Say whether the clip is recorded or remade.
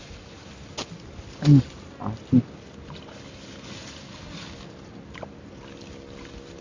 recorded